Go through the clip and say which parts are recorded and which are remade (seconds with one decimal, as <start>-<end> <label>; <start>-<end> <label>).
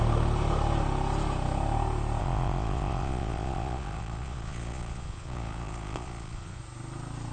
0.0-2.2 recorded; 2.2-6.6 remade; 6.6-7.3 recorded